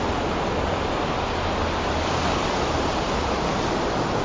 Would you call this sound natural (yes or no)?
yes